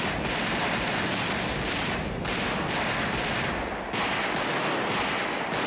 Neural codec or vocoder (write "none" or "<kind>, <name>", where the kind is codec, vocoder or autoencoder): none